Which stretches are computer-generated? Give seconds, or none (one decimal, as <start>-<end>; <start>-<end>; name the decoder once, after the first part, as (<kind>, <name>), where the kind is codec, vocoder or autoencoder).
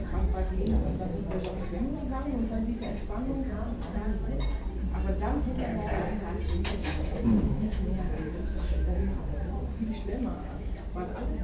6.8-9.0 (autoencoder, DAC-VAE); 10.1-10.7